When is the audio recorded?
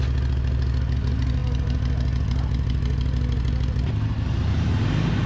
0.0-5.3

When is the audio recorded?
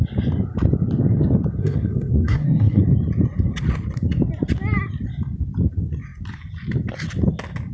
0.0-1.6; 2.8-7.7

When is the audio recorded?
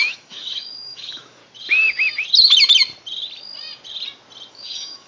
1.4-4.5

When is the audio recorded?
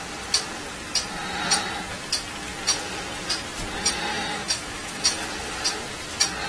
0.0-4.1; 5.2-6.5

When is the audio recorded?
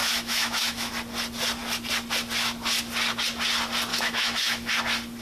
0.9-3.9; 4.7-5.2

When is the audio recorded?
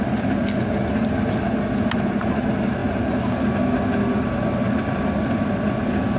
0.0-6.2